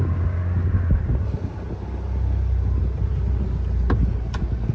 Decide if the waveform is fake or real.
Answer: real